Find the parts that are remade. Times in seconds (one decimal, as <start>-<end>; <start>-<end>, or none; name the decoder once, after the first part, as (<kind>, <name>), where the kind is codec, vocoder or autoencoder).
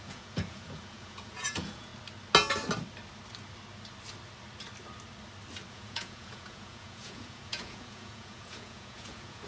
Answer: 0.0-1.9 (vocoder, Vocos); 5.7-9.5